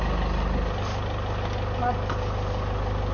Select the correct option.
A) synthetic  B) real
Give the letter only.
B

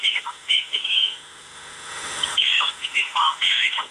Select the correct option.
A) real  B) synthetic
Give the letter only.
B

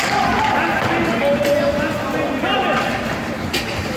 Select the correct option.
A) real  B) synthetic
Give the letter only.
A